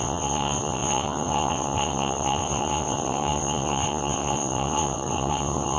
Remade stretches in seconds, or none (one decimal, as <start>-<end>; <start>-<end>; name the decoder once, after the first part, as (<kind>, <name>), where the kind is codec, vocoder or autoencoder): 0.0-5.8 (vocoder, WaveNeXt)

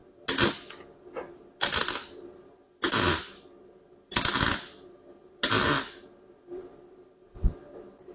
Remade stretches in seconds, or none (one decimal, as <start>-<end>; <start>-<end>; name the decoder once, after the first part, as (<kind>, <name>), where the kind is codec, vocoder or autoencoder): none

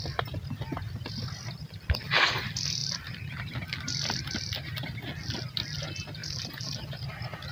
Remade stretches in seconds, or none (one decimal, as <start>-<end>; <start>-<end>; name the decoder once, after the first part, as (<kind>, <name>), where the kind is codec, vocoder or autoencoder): 6.2-7.0 (vocoder, BigVGAN v2)